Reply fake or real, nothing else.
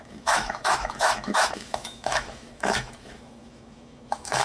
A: fake